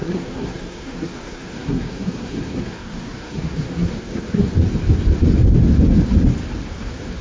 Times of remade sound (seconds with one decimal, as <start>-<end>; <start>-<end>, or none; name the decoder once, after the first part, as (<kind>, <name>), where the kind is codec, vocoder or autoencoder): 0.0-4.5 (codec, SNAC); 6.8-7.2